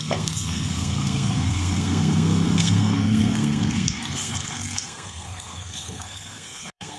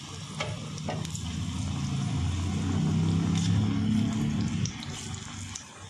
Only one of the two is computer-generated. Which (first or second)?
first